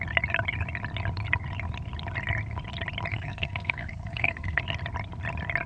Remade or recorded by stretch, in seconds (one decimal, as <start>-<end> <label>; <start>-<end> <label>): 0.0-3.1 recorded; 3.1-4.6 remade; 4.6-5.7 recorded

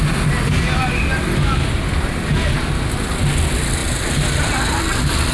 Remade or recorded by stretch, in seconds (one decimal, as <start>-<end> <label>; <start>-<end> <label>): 0.0-5.3 recorded

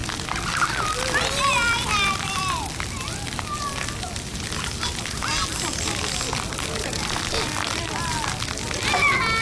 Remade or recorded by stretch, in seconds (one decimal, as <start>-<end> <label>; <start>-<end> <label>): 0.0-9.4 recorded

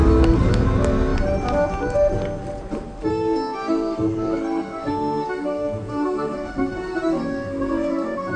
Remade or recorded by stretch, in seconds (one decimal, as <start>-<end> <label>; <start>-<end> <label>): 0.0-3.1 recorded; 3.1-8.4 remade

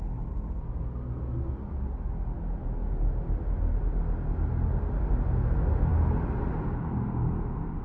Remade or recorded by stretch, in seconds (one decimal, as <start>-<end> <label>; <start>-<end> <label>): 0.0-7.8 recorded

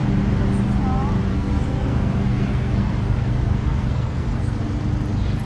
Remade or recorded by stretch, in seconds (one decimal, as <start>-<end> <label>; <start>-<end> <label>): 0.0-1.3 recorded; 1.3-4.6 remade; 4.6-5.5 recorded

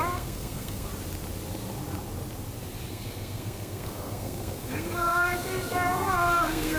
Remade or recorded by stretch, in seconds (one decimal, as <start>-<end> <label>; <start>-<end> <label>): 0.0-0.9 remade; 0.9-2.9 recorded; 2.9-6.8 remade

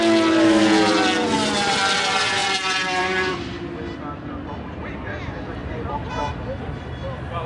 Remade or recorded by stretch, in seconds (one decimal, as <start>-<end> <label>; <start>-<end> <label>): 0.0-7.5 recorded